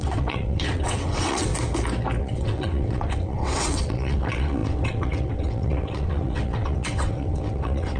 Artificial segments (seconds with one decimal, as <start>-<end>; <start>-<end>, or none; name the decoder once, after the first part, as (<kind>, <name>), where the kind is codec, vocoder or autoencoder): 0.0-1.5 (vocoder, WaveNeXt); 2.2-8.0